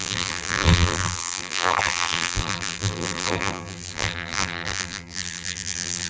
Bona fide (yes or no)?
no